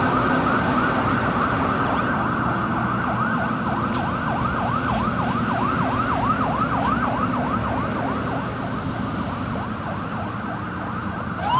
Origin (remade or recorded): recorded